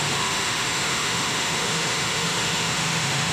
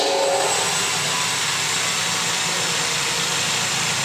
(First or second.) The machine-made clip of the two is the first